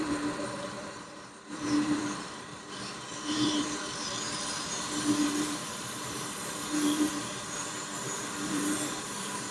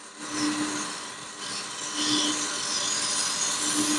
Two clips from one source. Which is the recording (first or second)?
second